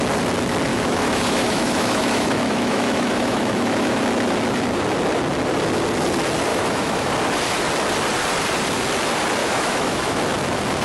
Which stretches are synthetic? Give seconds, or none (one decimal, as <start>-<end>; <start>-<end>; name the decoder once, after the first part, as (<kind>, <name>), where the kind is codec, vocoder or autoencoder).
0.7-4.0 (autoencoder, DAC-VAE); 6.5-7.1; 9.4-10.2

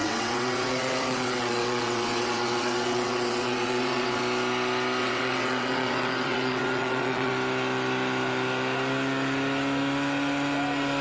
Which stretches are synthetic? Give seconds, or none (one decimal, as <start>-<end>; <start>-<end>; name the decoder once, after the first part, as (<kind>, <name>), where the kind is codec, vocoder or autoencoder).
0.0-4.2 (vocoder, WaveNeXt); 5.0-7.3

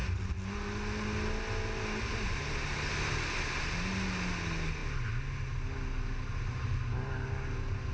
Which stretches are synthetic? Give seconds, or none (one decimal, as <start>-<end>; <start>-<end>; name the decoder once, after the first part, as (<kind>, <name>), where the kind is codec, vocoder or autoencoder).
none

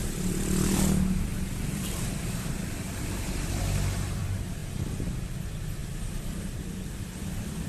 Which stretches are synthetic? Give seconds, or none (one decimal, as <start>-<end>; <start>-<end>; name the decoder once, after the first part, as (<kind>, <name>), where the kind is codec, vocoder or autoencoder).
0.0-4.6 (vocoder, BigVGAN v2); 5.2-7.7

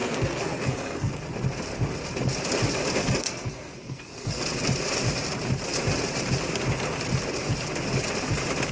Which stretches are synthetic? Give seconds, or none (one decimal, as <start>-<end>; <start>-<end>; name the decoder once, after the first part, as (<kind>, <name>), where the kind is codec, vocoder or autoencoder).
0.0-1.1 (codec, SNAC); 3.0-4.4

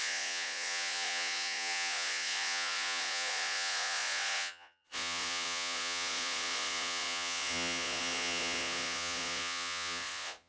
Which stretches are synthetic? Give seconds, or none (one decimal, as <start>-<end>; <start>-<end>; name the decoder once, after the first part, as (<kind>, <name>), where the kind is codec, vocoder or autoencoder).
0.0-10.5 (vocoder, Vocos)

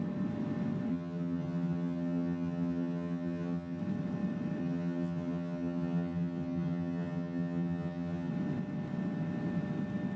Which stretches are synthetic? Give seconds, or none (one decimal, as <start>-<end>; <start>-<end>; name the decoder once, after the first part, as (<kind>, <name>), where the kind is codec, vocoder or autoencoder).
0.9-3.8 (vocoder, HiFi-GAN); 4.6-8.3

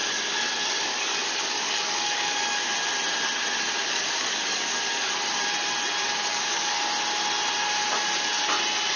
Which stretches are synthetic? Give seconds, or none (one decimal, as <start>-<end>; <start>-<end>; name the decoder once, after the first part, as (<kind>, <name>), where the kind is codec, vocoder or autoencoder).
0.0-2.7 (codec, DAC); 3.8-5.1; 6.3-6.8